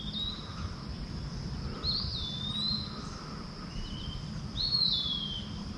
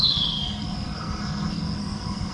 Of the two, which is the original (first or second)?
first